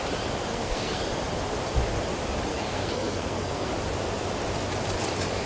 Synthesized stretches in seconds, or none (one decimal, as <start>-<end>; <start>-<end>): 0.5-1.0; 2.5-3.7